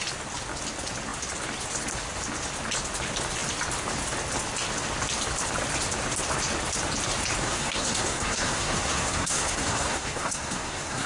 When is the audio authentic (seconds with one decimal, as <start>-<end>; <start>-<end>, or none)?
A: 0.0-7.4